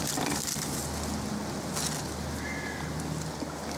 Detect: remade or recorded recorded